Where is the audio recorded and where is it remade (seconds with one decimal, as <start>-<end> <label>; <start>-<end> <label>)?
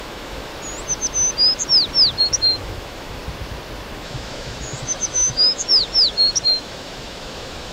0.0-0.5 remade; 0.5-2.2 recorded; 2.2-3.2 remade; 3.2-3.9 recorded; 3.9-7.7 remade